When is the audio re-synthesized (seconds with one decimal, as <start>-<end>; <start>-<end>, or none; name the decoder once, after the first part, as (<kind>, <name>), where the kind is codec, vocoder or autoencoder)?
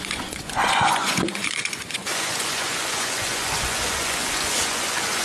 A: 0.0-5.2 (vocoder, Vocos)